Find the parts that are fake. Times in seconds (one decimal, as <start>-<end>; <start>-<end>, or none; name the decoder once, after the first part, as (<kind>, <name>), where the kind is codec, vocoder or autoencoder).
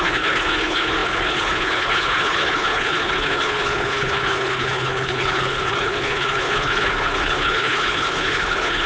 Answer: 0.0-8.9 (codec, HILCodec)